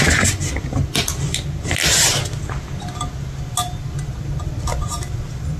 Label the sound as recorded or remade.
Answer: recorded